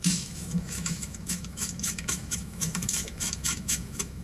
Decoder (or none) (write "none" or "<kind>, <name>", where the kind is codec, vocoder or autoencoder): autoencoder, DAC-VAE